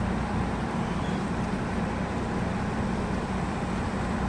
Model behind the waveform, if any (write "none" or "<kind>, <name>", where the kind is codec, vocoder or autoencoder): vocoder, BigVGAN v2